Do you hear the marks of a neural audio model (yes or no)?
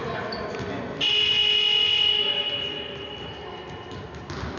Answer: no